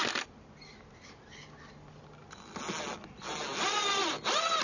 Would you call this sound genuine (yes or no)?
yes